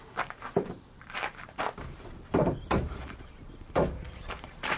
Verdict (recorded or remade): remade